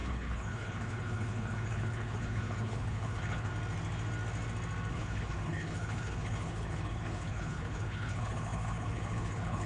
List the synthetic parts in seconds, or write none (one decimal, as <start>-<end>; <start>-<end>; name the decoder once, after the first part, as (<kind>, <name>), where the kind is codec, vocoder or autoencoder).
0.0-3.5 (codec, HILCodec); 4.9-9.7